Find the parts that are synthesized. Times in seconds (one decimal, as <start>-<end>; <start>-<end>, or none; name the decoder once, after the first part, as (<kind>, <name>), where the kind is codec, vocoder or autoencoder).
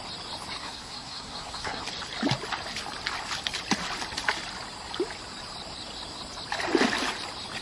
0.6-1.8 (codec, SNAC)